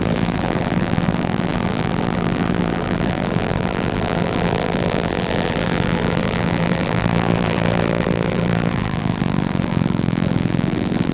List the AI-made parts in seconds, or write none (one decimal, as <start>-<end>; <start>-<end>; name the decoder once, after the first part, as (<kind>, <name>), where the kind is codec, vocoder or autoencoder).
0.0-11.1 (vocoder, BigVGAN v2)